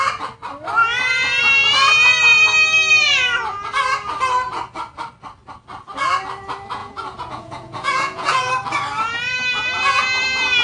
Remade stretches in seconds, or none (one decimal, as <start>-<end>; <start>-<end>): 6.8-8.5